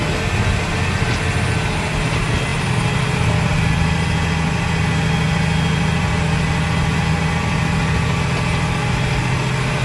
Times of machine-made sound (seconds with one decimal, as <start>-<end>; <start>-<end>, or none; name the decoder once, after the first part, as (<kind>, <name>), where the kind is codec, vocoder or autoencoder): none